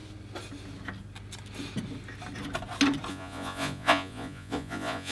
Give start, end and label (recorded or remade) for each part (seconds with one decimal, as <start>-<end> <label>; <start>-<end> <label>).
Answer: 0.0-3.1 recorded; 3.1-5.1 remade